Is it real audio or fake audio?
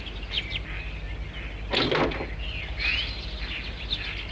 real